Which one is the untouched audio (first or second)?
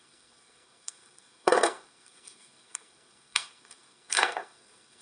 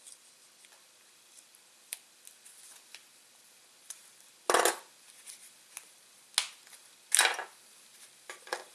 second